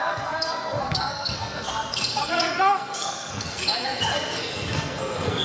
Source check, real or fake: fake